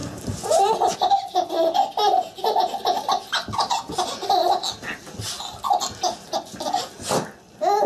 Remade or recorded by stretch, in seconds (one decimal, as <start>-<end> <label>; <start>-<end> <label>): 0.0-0.5 remade; 0.5-7.9 recorded